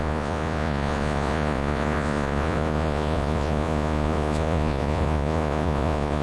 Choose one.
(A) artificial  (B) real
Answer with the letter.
A